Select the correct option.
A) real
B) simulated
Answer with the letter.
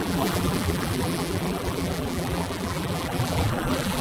B